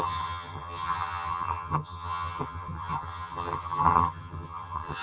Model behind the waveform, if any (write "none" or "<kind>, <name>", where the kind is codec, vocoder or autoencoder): vocoder, HiFi-GAN